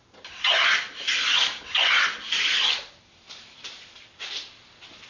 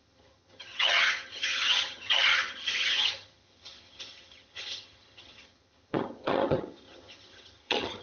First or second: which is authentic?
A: first